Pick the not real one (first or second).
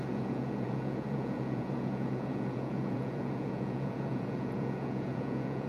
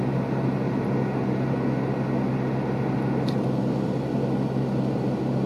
first